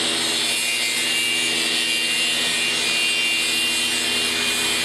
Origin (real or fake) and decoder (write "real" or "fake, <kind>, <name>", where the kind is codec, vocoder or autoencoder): real